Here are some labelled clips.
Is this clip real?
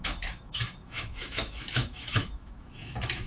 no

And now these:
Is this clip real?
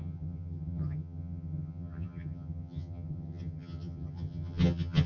no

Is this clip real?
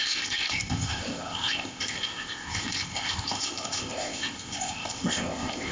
no